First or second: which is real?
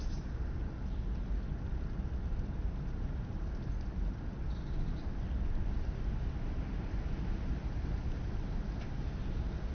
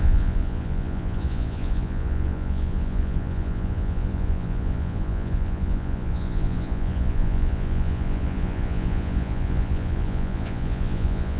first